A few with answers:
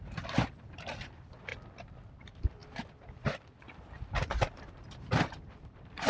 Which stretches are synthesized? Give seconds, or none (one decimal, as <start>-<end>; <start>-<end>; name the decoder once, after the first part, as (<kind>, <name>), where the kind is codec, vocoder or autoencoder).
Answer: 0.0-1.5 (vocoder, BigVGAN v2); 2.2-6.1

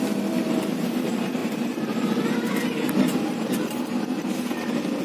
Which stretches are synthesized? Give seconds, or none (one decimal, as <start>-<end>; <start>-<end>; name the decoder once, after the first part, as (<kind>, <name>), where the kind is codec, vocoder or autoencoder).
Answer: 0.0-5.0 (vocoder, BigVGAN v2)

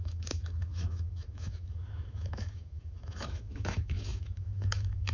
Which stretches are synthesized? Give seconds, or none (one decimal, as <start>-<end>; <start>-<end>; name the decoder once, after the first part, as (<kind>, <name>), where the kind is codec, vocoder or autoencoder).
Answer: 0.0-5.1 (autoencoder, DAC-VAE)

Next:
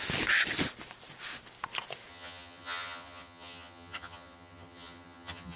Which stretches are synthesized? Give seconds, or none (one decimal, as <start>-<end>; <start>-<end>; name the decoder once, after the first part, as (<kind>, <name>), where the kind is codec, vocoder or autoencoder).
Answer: 2.1-5.6 (vocoder, HiFi-GAN)

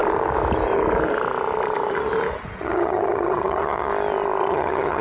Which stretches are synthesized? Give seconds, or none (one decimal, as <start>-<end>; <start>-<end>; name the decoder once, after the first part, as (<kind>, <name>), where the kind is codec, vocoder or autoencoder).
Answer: 2.6-3.9 (vocoder, HiFi-GAN); 4.5-5.0

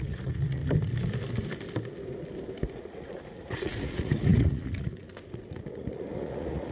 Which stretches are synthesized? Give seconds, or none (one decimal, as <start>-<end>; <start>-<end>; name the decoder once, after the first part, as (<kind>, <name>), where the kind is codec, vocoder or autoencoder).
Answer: 0.0-0.6 (vocoder, Vocos); 2.7-6.7